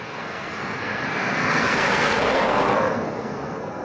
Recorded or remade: remade